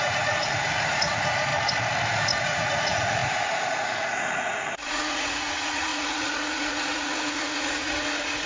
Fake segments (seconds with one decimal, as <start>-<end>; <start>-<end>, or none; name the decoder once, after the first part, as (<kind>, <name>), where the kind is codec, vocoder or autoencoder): 0.0-1.5 (vocoder, Vocos); 2.4-8.5